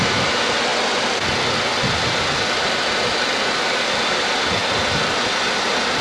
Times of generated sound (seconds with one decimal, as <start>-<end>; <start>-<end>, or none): none